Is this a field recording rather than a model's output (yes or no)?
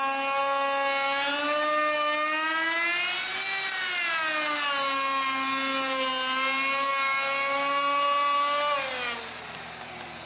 yes